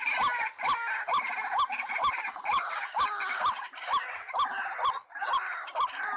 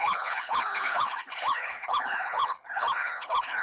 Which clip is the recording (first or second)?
first